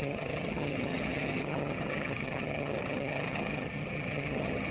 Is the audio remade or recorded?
remade